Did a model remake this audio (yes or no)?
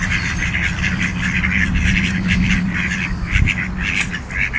no